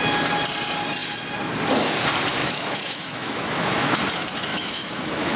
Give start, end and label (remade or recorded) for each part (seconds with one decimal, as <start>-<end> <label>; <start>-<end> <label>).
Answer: 0.0-2.4 recorded; 2.4-4.0 remade; 4.0-4.5 recorded; 4.5-5.4 remade